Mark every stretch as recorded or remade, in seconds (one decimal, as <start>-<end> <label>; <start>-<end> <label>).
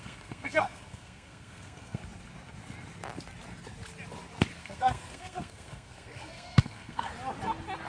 0.0-2.0 remade; 2.0-4.6 recorded; 4.6-7.1 remade; 7.1-7.9 recorded